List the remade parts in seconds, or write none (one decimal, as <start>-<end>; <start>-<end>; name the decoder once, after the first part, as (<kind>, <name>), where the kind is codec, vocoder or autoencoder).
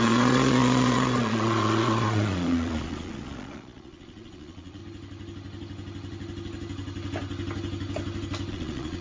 0.0-4.8 (vocoder, Vocos); 8.5-9.0